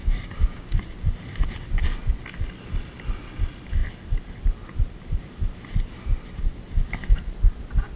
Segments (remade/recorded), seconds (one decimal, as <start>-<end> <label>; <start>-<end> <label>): 0.0-0.8 remade; 0.8-8.0 recorded